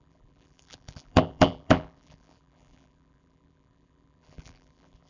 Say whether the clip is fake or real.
fake